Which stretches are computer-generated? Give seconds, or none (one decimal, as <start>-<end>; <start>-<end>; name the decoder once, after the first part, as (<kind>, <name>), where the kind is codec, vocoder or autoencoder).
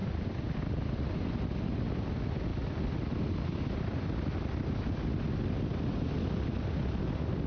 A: none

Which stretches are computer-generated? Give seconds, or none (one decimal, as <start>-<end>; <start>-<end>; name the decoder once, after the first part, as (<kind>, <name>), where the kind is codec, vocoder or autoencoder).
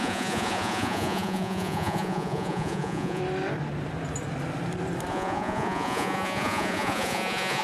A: 0.0-3.2 (vocoder, Vocos); 5.1-7.6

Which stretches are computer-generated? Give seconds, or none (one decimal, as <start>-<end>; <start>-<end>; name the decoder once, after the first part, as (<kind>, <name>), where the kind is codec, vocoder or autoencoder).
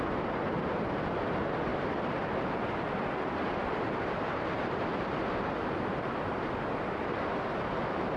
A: 1.7-6.4 (vocoder, BigVGAN v2)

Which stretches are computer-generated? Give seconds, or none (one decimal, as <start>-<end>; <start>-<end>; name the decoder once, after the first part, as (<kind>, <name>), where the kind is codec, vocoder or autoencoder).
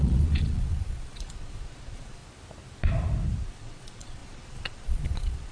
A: 0.0-2.2 (vocoder, Vocos); 3.5-5.5